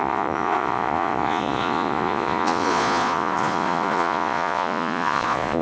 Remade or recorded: remade